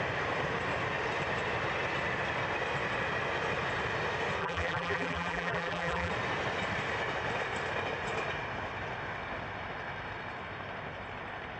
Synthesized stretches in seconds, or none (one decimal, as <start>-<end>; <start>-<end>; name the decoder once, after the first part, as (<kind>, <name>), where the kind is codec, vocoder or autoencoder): 4.4-6.1 (vocoder, BigVGAN v2)